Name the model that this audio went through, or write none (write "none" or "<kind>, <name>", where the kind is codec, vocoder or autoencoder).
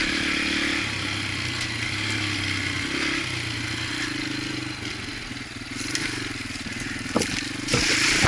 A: none